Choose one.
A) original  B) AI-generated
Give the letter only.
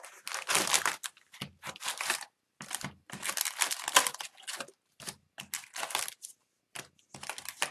A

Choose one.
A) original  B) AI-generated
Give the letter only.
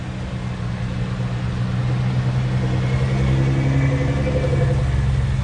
A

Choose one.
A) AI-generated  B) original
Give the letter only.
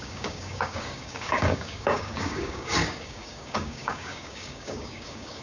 A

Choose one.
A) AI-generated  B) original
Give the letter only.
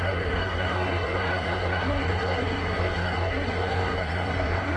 A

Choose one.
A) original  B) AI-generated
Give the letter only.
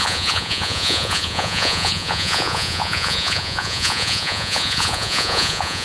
B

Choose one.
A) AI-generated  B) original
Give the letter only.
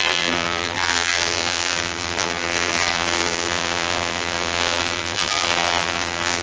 A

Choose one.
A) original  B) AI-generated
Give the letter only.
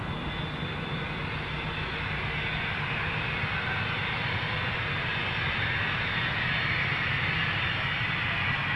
A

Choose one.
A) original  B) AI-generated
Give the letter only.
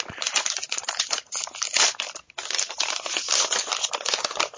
B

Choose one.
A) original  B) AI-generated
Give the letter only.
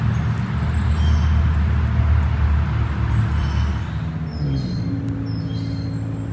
A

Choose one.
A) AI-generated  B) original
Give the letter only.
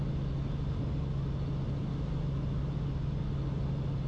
B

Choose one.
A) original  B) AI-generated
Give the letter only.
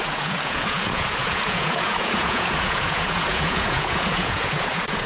B